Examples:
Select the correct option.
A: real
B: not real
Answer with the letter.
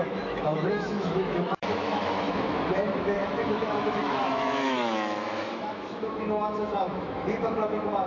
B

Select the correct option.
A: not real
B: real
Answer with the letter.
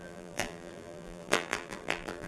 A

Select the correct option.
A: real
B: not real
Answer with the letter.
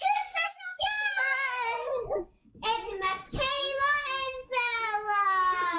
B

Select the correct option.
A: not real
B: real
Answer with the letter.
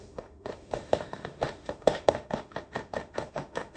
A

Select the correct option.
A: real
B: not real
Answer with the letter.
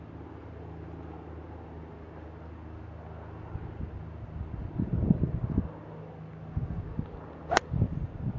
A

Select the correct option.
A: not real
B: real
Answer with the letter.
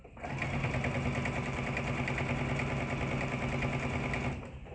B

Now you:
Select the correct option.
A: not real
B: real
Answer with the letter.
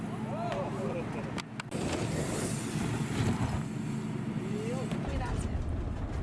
B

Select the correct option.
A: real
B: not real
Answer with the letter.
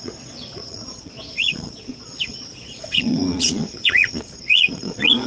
B